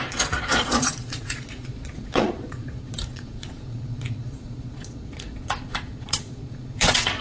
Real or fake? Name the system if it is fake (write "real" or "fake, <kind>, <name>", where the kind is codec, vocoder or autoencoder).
fake, vocoder, Vocos